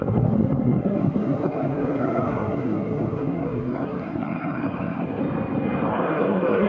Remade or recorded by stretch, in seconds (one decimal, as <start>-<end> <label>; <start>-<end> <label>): 0.0-5.2 remade; 5.2-5.9 recorded; 5.9-6.7 remade